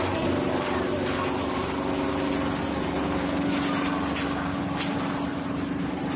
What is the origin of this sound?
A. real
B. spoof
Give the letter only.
A